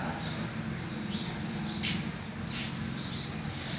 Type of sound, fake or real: real